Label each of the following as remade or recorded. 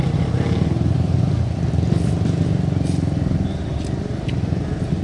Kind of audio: recorded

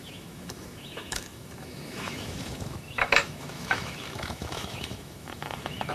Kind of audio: remade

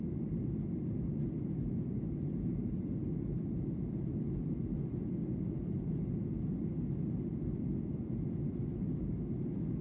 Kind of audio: recorded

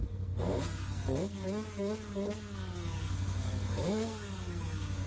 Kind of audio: remade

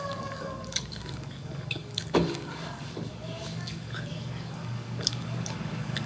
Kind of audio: remade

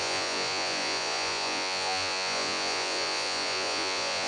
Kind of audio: remade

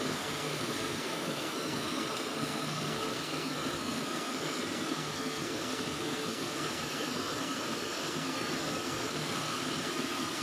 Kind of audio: remade